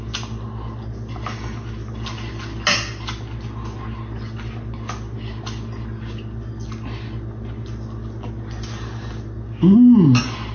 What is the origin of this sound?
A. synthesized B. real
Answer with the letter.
B